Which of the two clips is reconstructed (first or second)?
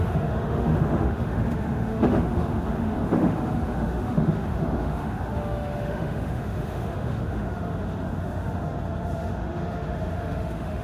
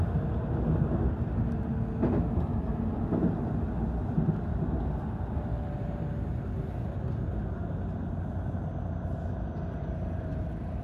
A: first